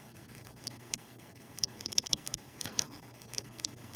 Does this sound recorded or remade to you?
remade